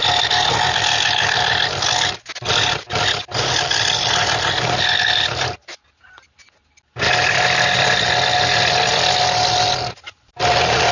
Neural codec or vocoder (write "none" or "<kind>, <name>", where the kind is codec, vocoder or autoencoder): none